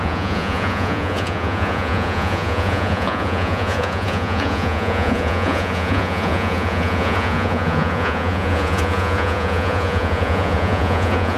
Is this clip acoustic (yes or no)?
no